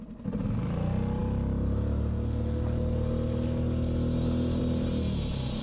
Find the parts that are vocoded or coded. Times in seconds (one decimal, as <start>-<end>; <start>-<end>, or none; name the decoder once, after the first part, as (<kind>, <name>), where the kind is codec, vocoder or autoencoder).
none